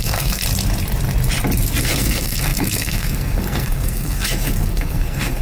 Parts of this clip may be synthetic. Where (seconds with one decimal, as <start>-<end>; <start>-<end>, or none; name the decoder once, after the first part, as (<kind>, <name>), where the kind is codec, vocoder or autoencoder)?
0.0-0.4 (codec, SNAC); 1.8-5.4

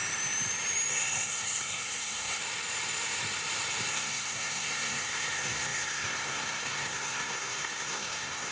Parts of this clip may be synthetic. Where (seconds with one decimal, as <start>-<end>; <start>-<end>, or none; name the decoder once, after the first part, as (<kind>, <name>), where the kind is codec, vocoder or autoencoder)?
0.9-2.4 (codec, SNAC); 3.9-8.5

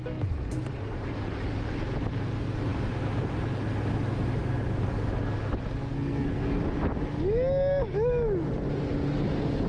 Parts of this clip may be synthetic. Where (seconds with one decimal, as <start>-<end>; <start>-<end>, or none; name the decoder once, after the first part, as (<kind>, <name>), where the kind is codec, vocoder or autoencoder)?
5.8-6.6 (codec, SNAC)

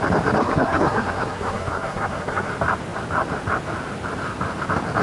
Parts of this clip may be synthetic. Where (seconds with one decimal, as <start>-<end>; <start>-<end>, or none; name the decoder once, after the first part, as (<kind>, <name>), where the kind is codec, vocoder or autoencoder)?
0.4-2.5 (codec, SNAC)

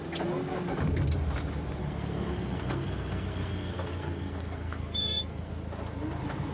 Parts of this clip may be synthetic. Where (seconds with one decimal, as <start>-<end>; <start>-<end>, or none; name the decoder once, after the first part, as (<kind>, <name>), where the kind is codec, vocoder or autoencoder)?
1.8-5.5 (codec, SNAC)

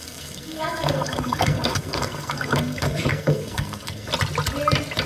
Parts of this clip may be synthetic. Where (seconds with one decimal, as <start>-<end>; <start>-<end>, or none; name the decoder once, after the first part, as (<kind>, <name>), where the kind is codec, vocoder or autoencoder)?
0.0-4.1 (codec, SNAC)

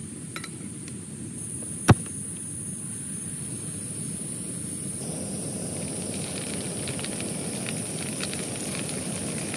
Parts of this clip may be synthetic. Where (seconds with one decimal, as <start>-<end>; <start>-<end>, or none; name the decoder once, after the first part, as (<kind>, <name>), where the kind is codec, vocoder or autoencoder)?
none

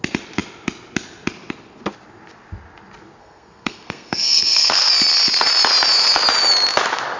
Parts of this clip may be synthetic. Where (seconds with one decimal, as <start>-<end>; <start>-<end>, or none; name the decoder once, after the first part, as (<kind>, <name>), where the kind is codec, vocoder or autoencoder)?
3.2-4.9 (codec, SNAC)